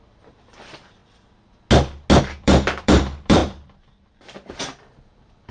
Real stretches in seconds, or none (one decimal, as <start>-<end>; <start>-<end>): 1.0-2.2